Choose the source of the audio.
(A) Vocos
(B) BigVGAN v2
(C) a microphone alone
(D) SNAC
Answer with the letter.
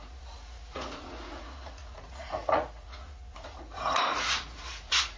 A